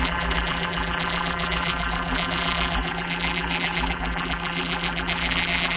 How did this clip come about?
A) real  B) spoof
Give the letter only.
B